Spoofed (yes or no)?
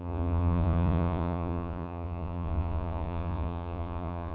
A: yes